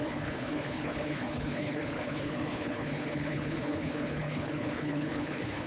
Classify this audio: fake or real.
fake